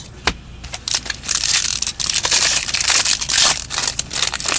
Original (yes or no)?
yes